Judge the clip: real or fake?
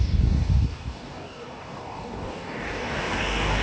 fake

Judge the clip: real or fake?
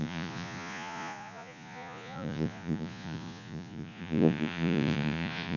fake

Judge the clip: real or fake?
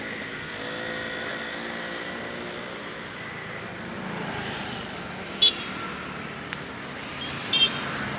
real